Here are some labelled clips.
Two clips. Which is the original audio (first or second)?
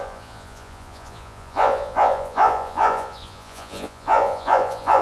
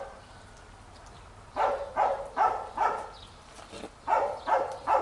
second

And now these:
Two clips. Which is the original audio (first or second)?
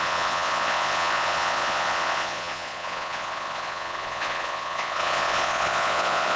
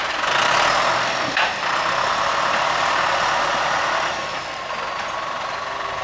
second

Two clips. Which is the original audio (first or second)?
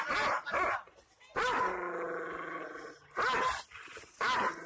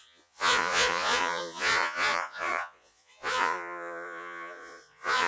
first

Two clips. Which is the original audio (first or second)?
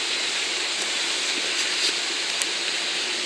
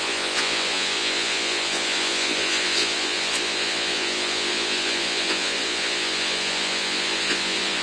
first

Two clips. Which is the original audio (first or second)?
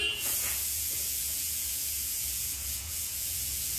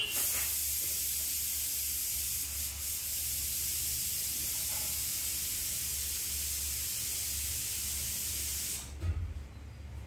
second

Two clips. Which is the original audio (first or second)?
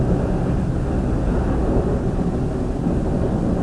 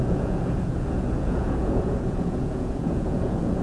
first